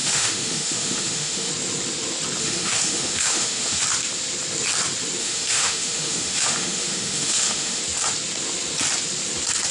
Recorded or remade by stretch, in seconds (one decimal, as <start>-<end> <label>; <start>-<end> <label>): 0.0-1.5 remade; 1.5-2.4 recorded; 2.4-3.8 remade; 3.8-5.2 recorded; 5.2-7.8 remade; 7.8-9.7 recorded